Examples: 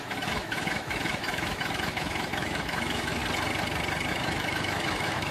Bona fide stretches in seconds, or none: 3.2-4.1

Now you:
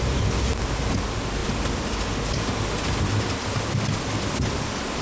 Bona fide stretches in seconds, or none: 0.0-5.0

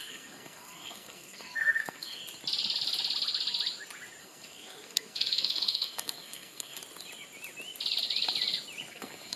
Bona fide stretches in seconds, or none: 2.2-4.2; 6.8-8.9